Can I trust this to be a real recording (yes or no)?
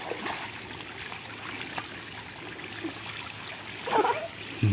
yes